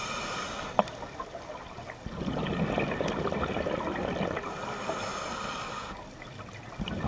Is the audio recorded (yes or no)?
yes